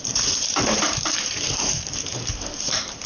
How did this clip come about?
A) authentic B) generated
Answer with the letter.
B